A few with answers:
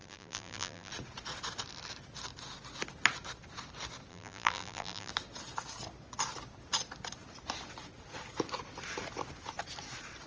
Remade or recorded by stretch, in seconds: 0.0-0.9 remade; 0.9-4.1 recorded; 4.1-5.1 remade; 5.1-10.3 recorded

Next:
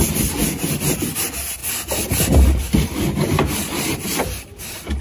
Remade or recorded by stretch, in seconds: 0.0-5.0 recorded

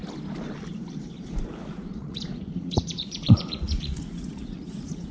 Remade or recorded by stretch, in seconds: 0.0-1.6 recorded; 1.6-5.1 remade

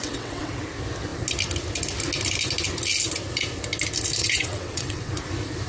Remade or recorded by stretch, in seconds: 0.0-0.5 remade; 0.5-4.2 recorded; 4.2-5.1 remade; 5.1-5.7 recorded

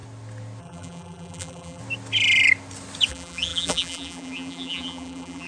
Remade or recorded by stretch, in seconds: 0.0-0.6 recorded; 0.6-1.8 remade; 1.8-3.1 recorded; 3.1-5.5 remade

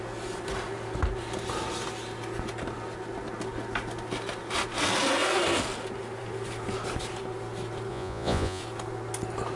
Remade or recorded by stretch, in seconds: 0.0-7.9 recorded; 7.9-8.6 remade; 8.6-9.6 recorded

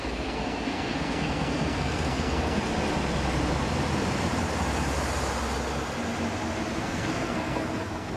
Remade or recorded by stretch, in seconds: 0.0-2.7 remade; 2.7-6.8 recorded; 6.8-8.2 remade

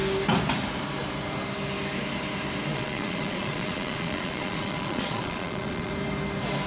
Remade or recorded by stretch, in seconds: 0.0-2.7 recorded; 2.7-5.9 remade; 5.9-6.7 recorded